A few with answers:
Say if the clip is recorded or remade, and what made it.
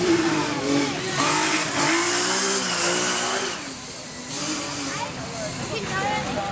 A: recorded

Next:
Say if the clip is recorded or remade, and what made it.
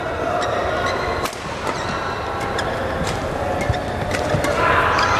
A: recorded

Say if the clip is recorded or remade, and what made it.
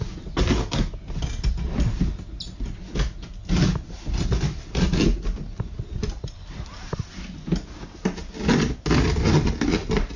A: recorded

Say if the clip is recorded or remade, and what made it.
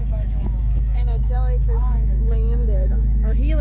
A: remade, autoencoder, DAC-VAE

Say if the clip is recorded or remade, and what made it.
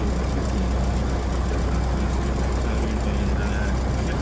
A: recorded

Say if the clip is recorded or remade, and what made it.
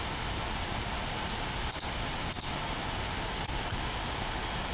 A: recorded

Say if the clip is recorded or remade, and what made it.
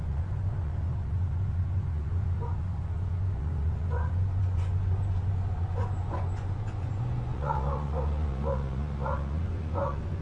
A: remade, vocoder, Vocos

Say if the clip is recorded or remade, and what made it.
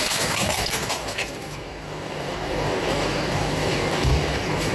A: remade, codec, DAC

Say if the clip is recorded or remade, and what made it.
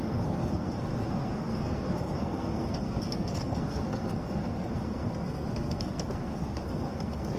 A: remade, codec, SNAC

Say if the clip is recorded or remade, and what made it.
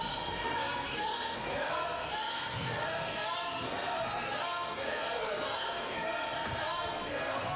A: remade, codec, SNAC